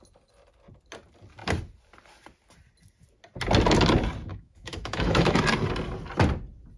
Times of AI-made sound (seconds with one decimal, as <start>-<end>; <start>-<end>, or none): 4.3-5.4